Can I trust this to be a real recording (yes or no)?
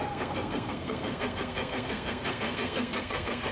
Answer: no